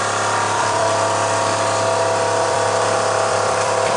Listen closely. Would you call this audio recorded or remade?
remade